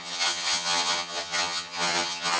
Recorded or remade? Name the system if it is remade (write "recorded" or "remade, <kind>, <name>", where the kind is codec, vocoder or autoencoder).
remade, vocoder, HiFi-GAN